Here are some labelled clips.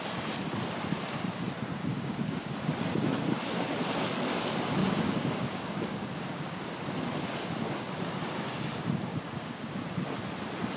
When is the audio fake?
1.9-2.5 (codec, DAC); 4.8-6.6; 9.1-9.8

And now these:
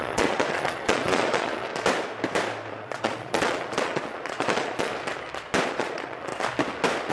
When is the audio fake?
0.0-1.7 (vocoder, Vocos); 2.7-4.9; 5.7-6.3

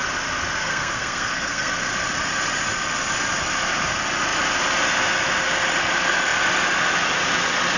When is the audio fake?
0.6-1.7 (codec, SNAC)

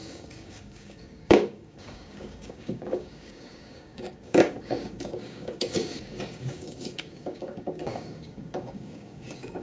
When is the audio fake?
0.0-9.6 (codec, DAC)

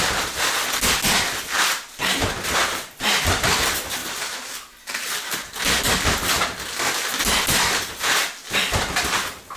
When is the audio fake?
4.0-5.8 (vocoder, BigVGAN v2)

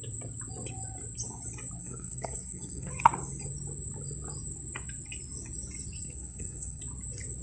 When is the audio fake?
1.8-2.9 (codec, SNAC); 6.0-6.8

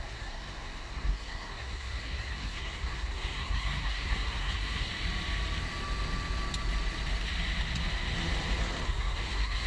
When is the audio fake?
0.0-4.9 (codec, SNAC); 8.9-9.7

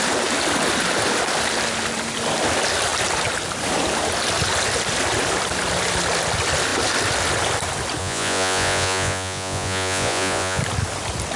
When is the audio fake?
8.0-10.6 (vocoder, Vocos)